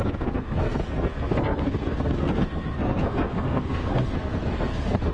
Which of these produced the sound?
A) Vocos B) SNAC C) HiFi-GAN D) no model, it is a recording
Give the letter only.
B